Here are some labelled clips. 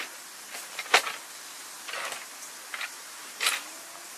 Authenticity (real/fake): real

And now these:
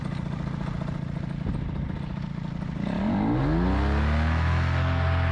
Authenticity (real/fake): real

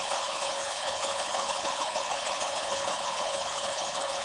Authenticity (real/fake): fake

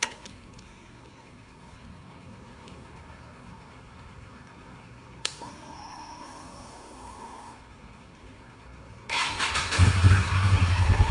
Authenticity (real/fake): fake